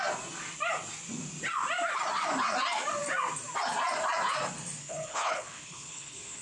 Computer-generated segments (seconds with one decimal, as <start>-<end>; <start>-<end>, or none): 4.8-6.4